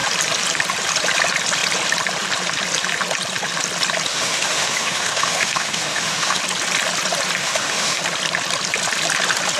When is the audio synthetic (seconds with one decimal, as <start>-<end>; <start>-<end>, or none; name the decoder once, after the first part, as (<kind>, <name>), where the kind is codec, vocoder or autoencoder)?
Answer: 4.1-6.4 (autoencoder, DAC-VAE); 7.4-8.0